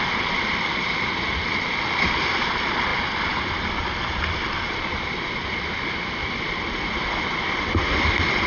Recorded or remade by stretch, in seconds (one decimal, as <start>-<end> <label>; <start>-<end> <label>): 0.0-8.5 recorded